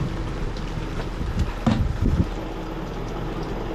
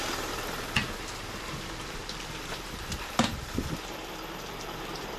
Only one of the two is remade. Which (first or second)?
second